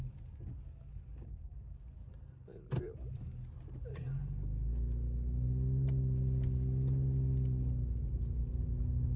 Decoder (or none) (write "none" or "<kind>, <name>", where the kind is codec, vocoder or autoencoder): none